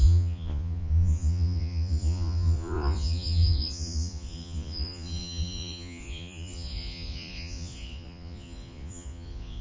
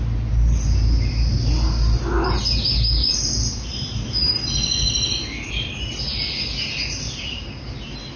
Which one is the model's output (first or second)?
first